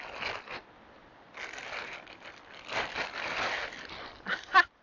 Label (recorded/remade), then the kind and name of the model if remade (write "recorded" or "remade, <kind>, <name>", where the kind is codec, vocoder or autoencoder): recorded